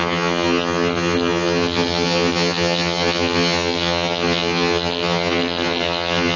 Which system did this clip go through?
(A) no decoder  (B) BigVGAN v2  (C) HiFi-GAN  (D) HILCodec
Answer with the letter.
C